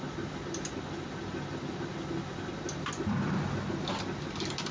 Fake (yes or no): no